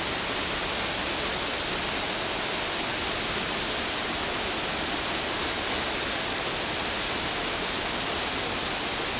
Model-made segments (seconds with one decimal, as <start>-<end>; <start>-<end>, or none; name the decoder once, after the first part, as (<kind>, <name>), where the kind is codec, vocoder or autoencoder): none